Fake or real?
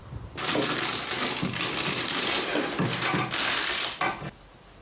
real